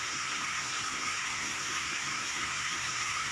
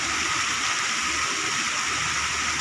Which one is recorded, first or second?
second